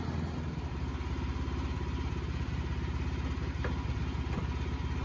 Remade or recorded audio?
recorded